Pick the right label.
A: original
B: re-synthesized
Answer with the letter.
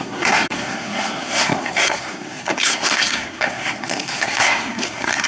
B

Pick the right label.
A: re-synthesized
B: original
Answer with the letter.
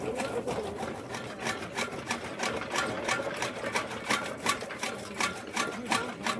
B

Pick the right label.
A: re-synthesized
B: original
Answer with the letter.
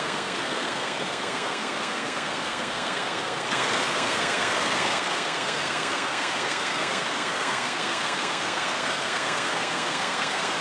A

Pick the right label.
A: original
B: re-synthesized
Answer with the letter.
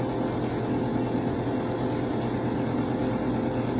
A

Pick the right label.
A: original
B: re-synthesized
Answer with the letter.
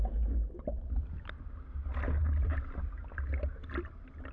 A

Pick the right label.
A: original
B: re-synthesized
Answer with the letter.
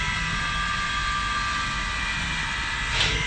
A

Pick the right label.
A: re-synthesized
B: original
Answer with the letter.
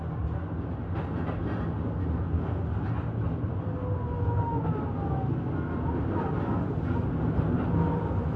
B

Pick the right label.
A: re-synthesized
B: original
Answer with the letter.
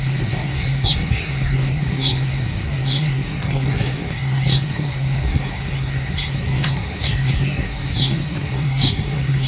A